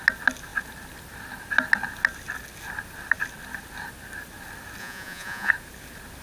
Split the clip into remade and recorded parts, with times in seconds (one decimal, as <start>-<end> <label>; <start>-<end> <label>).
0.0-4.8 recorded; 4.8-5.5 remade; 5.5-6.2 recorded